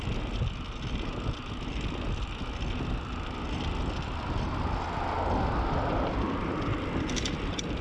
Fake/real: real